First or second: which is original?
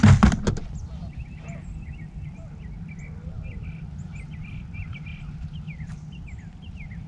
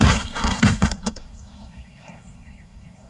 first